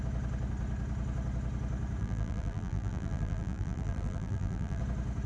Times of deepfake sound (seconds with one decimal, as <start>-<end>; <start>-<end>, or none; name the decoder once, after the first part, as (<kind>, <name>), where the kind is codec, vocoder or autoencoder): 2.0-4.8 (vocoder, BigVGAN v2)